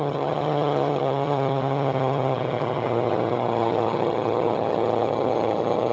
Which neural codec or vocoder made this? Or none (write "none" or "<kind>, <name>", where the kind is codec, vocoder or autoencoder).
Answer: vocoder, HiFi-GAN